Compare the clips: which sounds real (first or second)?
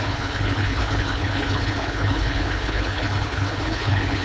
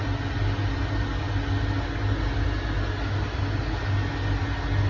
second